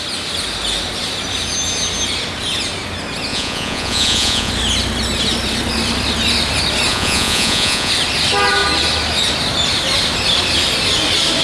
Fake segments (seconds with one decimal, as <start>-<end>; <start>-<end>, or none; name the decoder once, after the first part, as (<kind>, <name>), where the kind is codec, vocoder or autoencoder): 3.3-4.5 (vocoder, Vocos); 6.9-7.9